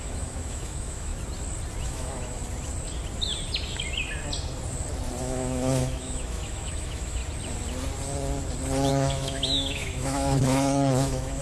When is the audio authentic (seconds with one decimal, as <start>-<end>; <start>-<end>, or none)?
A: 1.1-1.8; 2.4-5.2; 7.2-8.9